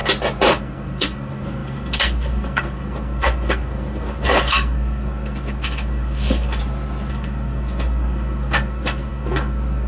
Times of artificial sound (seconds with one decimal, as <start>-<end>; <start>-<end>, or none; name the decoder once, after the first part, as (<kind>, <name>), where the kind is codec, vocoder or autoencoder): 0.6-6.6 (codec, SNAC); 7.1-9.9